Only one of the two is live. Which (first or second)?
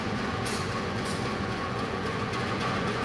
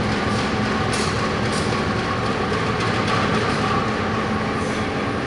second